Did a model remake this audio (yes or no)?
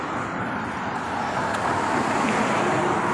no